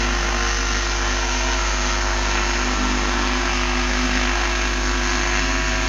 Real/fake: fake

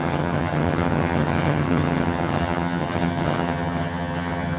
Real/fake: fake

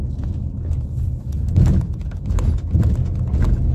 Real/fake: real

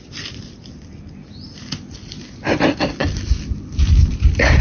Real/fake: fake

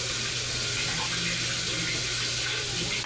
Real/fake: real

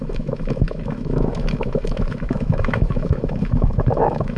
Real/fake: fake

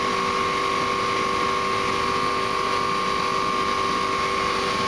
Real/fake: real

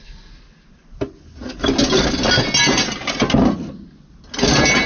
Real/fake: real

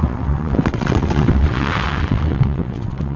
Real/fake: fake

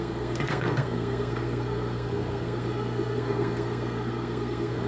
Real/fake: fake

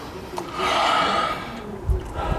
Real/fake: real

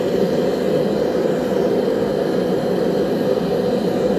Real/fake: real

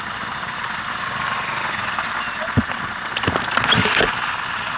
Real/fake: real